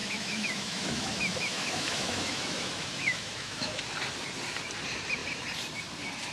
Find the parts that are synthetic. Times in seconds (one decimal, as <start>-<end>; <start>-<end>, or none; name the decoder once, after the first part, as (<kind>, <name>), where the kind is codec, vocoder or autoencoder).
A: 0.0-3.8 (autoencoder, DAC-VAE)